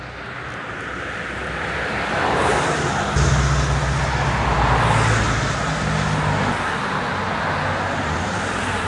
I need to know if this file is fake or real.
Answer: real